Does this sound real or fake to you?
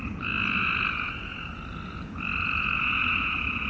fake